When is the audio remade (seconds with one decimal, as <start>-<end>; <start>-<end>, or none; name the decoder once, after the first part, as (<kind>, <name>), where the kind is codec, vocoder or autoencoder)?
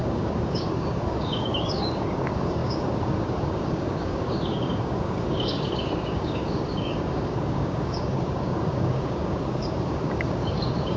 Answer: 0.0-11.0 (codec, DAC)